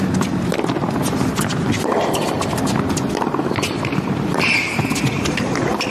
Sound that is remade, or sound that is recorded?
recorded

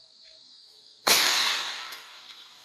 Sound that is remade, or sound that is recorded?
remade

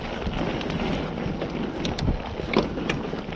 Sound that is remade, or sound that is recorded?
recorded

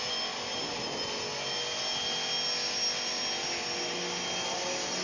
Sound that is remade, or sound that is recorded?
recorded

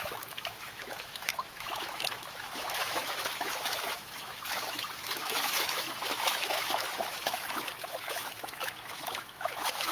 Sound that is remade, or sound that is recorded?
remade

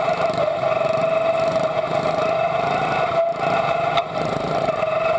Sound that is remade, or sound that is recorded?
remade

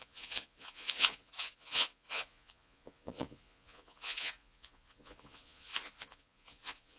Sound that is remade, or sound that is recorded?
remade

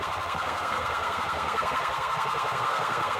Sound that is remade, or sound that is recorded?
remade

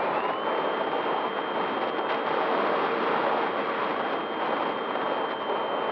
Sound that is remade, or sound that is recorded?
recorded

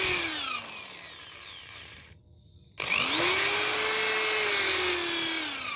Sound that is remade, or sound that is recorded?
recorded